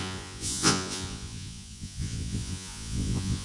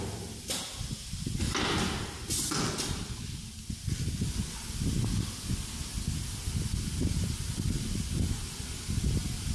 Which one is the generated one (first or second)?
first